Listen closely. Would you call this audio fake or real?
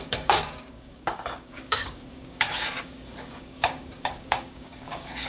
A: fake